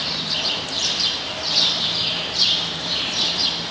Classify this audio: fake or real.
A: fake